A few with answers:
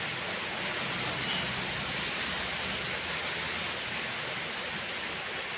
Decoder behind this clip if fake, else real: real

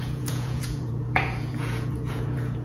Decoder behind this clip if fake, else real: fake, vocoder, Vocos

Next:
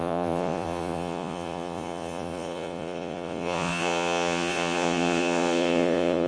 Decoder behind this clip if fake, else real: fake, vocoder, Vocos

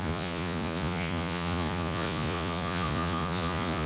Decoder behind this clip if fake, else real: fake, vocoder, Vocos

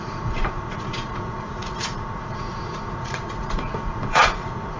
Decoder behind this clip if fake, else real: fake, vocoder, Vocos